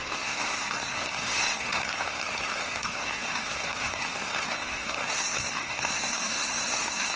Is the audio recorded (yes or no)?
no